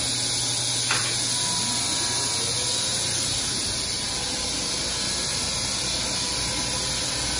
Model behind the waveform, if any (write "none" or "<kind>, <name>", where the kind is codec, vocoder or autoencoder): none